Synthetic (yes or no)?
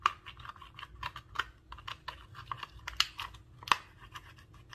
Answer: no